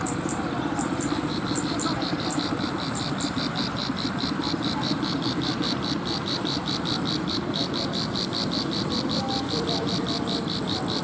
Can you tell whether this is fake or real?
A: fake